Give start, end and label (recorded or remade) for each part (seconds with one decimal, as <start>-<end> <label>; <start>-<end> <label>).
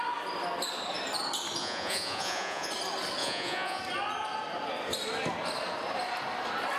0.0-1.6 recorded; 1.6-2.7 remade; 2.7-3.2 recorded; 3.2-3.8 remade; 3.8-6.8 recorded